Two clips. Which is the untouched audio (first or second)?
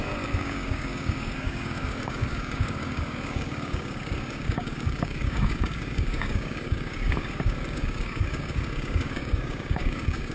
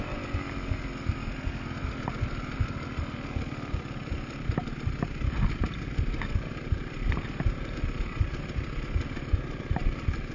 second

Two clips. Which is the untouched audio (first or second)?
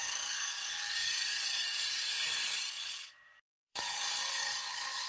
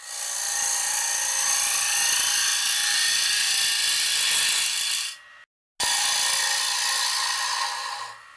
second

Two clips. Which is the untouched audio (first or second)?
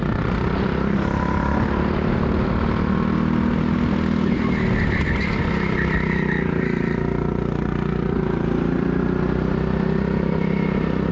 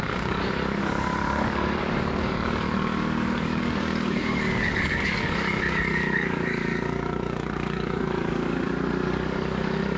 first